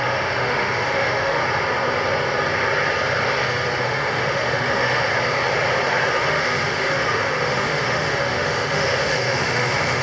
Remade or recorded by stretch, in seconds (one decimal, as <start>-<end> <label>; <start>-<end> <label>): 0.0-1.4 remade; 1.4-3.8 recorded; 3.8-5.1 remade; 5.1-6.1 recorded; 6.1-10.0 remade